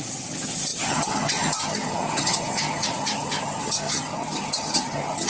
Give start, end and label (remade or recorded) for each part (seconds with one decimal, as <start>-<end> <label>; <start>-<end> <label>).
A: 0.0-5.3 remade